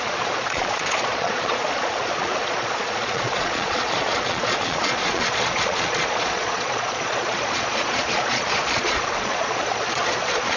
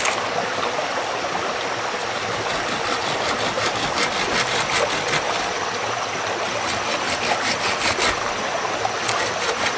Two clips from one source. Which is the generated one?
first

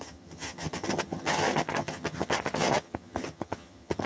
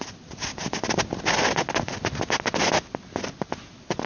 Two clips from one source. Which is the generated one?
first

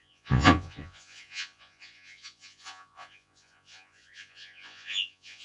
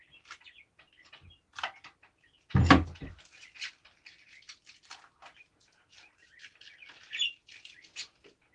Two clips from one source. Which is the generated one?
first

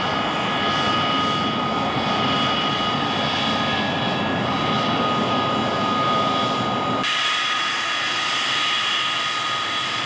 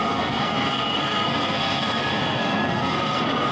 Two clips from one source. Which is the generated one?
second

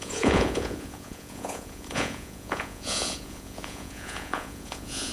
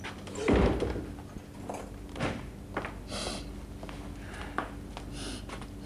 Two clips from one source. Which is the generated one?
first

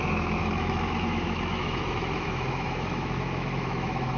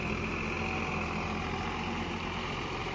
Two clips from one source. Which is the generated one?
first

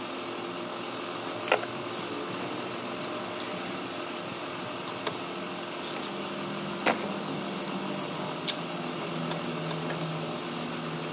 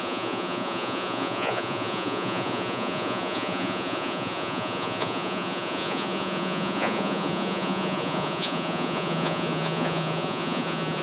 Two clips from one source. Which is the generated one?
second